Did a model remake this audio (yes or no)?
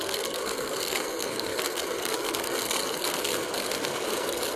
yes